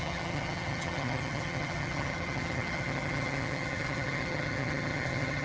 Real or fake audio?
fake